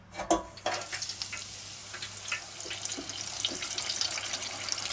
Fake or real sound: real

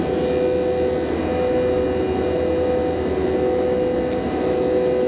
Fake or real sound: real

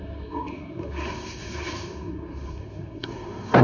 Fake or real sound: fake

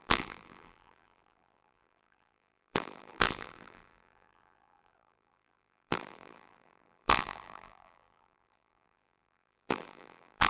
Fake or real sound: fake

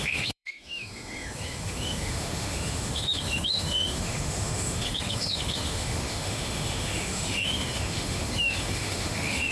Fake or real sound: fake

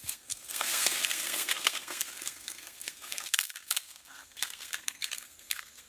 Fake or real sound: fake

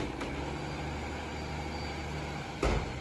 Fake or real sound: real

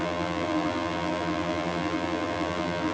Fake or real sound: fake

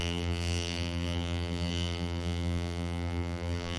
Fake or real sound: fake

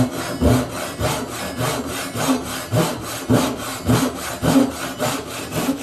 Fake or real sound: real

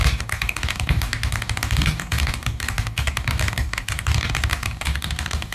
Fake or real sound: fake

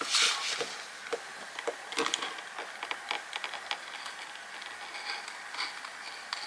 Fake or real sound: real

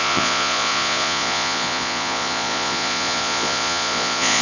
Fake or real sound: fake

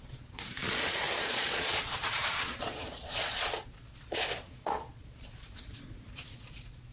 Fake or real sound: fake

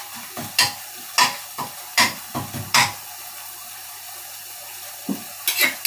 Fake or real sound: real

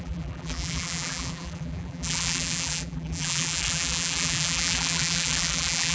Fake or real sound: fake